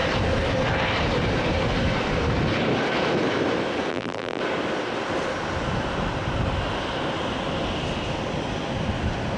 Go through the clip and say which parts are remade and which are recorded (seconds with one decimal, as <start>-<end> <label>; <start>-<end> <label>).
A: 0.0-3.9 recorded; 3.9-4.4 remade; 4.4-9.4 recorded